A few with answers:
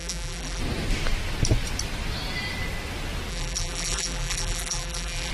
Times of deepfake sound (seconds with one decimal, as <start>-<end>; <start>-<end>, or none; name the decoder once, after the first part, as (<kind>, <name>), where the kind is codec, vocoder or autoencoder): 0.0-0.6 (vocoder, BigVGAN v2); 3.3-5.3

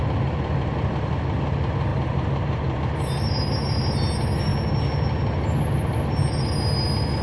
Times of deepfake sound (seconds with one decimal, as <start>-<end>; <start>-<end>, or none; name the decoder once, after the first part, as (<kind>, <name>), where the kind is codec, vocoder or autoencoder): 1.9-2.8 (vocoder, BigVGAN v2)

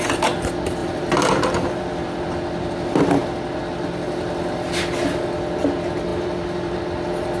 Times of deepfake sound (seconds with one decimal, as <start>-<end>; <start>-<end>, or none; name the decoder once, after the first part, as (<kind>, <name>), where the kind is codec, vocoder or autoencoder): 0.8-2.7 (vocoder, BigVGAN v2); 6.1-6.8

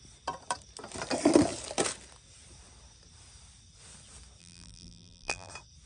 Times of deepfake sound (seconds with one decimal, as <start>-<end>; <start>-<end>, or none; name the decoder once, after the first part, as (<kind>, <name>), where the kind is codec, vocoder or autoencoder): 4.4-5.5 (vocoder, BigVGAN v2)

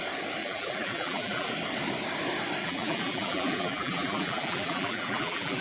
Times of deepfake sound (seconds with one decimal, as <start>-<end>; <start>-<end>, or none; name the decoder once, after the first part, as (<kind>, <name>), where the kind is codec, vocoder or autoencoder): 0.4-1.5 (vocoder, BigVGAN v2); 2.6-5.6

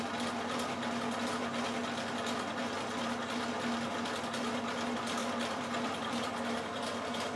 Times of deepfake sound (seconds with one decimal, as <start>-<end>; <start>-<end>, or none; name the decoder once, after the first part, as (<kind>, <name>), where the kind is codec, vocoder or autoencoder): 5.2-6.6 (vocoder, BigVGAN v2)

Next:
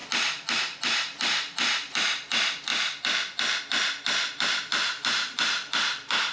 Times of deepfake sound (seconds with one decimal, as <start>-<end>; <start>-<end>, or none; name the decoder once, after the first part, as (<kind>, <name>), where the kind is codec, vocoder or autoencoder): 0.6-2.7 (vocoder, BigVGAN v2); 3.6-6.3